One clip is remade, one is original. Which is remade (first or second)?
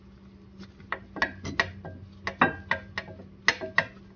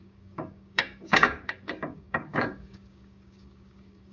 second